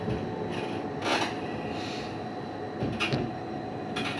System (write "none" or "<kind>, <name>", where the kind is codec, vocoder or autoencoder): none